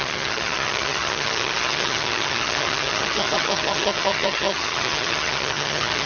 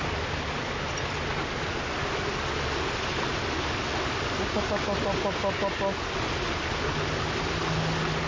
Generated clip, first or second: first